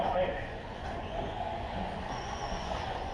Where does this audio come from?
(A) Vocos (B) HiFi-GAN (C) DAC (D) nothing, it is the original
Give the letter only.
A